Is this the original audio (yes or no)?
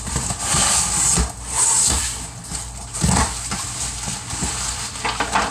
yes